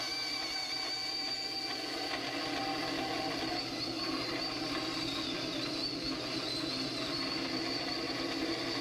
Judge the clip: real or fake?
real